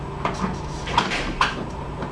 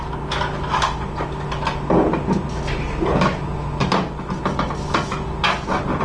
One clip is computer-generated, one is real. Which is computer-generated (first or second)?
first